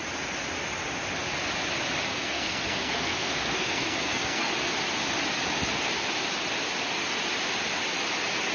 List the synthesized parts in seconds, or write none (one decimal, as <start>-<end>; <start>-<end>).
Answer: 2.1-4.5